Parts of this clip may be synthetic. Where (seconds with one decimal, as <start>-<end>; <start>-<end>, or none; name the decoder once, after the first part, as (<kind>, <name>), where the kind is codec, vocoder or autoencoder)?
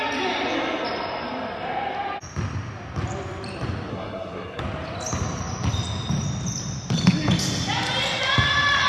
3.9-4.6 (codec, SNAC)